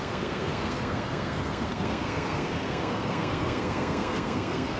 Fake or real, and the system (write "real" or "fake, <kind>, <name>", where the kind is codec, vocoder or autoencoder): fake, codec, SNAC